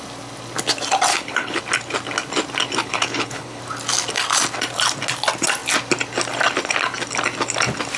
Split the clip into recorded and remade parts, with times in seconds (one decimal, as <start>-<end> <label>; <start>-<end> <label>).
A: 0.0-1.1 recorded; 1.1-1.6 remade; 1.6-2.8 recorded; 2.8-3.6 remade; 3.6-8.0 recorded